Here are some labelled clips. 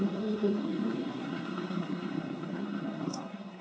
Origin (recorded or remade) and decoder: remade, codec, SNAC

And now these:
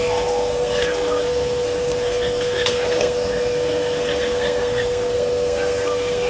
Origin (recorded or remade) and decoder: remade, codec, SNAC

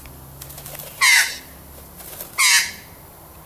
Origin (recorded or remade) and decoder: recorded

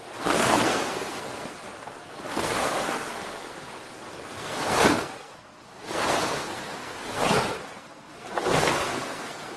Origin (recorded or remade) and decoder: remade, codec, SNAC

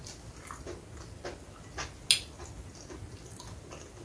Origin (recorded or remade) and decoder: recorded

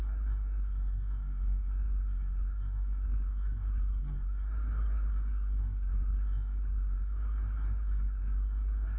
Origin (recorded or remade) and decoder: remade, codec, SNAC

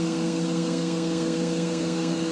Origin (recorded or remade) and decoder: remade, codec, SNAC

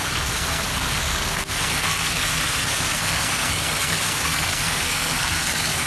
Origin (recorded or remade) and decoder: remade, codec, SNAC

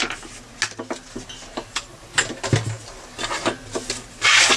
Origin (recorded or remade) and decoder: recorded